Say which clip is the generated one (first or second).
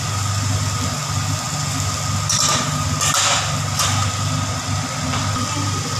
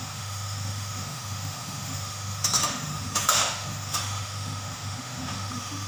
second